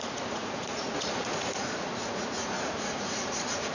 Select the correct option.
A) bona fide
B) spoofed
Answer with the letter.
B